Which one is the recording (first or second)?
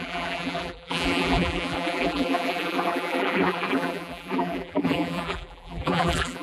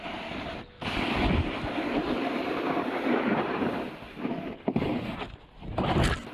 second